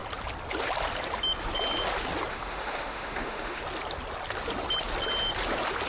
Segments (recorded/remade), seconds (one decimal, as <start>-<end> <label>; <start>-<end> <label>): 0.0-2.3 recorded; 2.3-3.6 remade; 3.6-5.9 recorded